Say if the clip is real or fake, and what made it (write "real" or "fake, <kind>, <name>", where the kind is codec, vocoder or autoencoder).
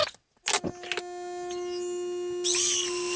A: real